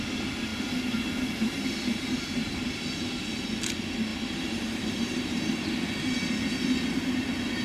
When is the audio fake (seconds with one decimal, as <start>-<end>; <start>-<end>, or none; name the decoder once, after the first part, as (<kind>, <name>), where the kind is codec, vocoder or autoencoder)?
4.1-5.4 (vocoder, BigVGAN v2)